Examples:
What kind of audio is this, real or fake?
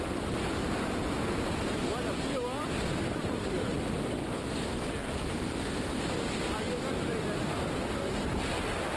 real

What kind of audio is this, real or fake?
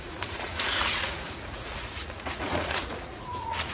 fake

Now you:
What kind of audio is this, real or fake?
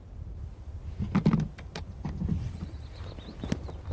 real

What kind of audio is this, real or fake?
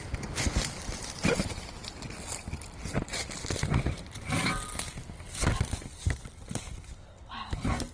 real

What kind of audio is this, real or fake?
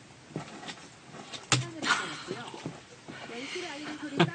real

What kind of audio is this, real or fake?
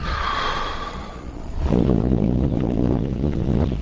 fake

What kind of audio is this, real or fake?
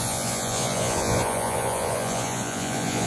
fake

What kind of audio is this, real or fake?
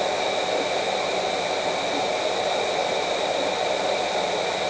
real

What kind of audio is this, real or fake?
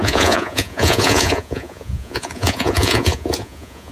fake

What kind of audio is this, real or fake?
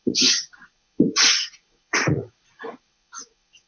fake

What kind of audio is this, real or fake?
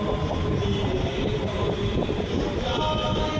real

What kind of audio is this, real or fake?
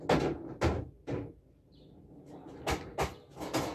real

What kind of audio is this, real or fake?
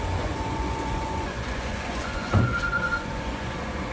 fake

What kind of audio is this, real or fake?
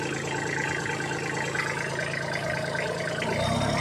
real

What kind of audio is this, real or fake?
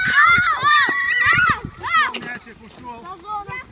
real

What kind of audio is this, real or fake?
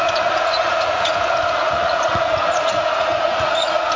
fake